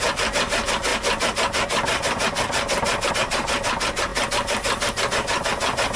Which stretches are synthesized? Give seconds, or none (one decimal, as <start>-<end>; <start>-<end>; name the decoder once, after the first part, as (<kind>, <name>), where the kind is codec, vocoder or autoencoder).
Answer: none